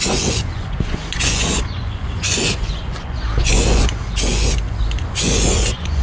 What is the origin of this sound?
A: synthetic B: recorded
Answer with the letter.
A